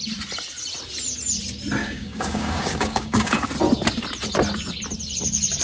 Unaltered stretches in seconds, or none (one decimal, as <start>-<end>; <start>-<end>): 0.0-1.8; 3.5-5.6